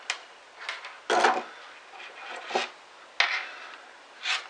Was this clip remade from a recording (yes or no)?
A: no